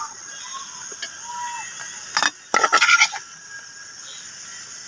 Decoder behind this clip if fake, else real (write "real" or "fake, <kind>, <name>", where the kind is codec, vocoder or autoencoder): real